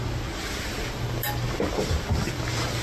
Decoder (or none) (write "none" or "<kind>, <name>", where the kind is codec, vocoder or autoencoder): none